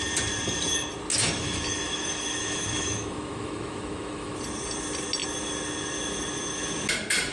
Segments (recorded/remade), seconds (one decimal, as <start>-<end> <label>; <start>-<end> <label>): 0.0-1.1 recorded; 1.1-4.4 remade; 4.4-7.3 recorded